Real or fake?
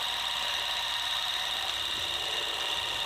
fake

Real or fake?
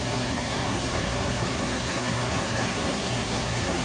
fake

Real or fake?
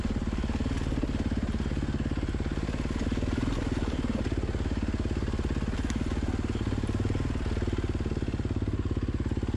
real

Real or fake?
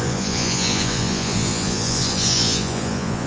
fake